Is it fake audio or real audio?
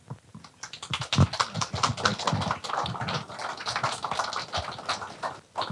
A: real